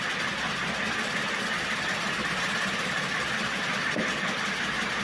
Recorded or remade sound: recorded